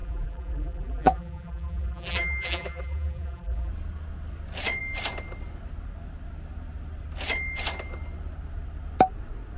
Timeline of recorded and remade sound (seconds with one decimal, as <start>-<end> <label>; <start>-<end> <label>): 0.0-3.7 remade; 3.7-9.6 recorded